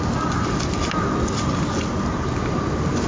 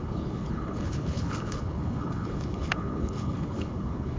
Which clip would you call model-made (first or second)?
second